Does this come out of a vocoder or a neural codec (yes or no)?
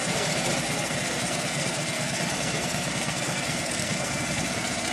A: yes